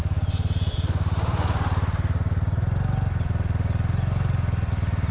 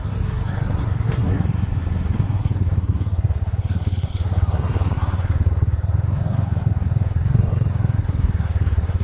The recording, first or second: first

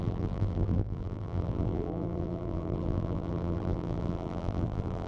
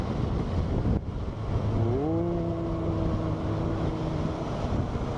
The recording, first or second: second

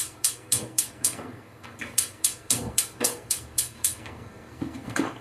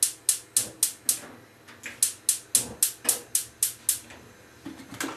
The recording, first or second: second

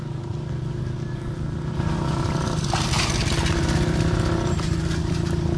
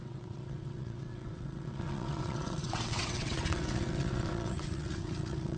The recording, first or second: first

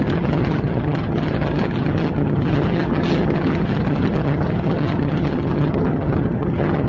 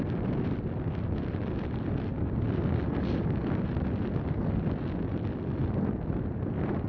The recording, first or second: second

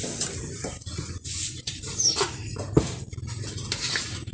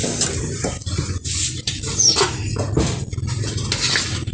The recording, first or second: second